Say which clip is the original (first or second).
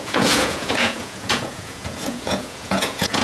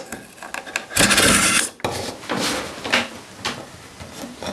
second